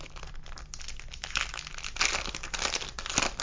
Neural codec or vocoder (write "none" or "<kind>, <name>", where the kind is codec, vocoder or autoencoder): none